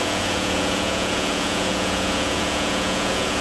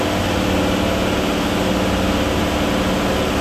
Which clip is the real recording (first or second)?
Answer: second